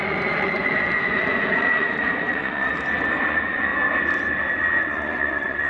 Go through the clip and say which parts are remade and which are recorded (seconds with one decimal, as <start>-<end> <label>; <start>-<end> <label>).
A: 0.0-2.7 remade; 2.7-3.2 recorded; 3.2-3.7 remade; 3.7-4.8 recorded; 4.8-5.7 remade